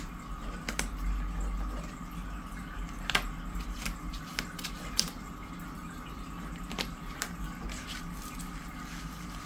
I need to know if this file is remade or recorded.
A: recorded